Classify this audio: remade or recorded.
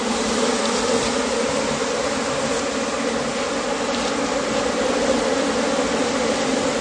recorded